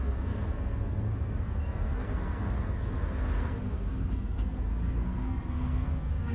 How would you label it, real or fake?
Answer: fake